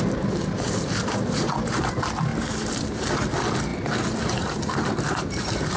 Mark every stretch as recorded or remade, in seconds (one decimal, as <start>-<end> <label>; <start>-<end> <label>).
0.0-0.4 recorded; 0.4-1.5 remade; 1.5-2.3 recorded; 2.3-3.1 remade; 3.1-3.7 recorded; 3.7-5.8 remade